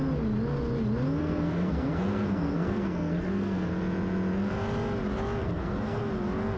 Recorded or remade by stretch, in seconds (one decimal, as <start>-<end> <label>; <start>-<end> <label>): 0.0-1.2 recorded; 1.2-3.7 remade; 3.7-5.4 recorded; 5.4-6.0 remade; 6.0-6.6 recorded